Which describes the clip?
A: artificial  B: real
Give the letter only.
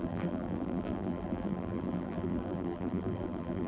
A